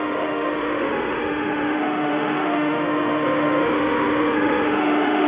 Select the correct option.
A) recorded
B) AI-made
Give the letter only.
B